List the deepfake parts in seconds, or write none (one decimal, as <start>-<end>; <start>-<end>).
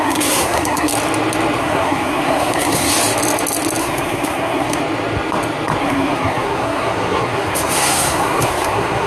0.0-0.9; 1.6-2.9; 3.8-4.8; 5.8-9.1